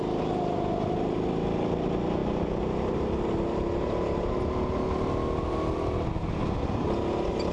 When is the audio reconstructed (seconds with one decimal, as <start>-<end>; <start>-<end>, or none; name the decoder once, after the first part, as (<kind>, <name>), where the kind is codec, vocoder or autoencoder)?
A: none